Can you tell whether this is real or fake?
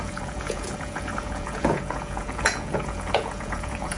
fake